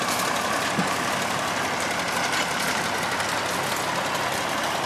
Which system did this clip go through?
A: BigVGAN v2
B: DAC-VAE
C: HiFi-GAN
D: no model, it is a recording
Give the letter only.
D